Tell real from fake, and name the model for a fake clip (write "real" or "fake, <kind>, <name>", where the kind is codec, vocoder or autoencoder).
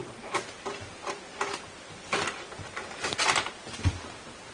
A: real